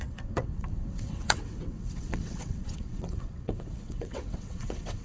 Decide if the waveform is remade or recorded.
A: remade